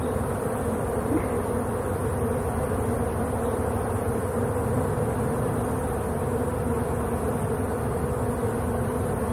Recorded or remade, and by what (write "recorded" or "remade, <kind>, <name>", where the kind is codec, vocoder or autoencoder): recorded